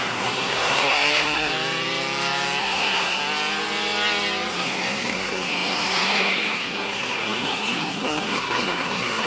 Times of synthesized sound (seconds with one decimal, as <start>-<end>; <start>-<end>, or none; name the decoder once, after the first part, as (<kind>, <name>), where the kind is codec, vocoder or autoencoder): 0.0-1.5 (codec, SNAC); 2.6-3.2; 4.5-9.3